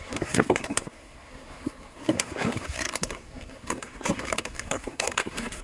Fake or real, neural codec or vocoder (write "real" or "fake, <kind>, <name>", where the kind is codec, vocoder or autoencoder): fake, codec, SNAC